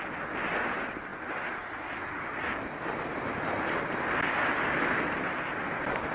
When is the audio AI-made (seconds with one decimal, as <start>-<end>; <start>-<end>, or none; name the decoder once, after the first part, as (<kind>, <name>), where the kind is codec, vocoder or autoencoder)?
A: none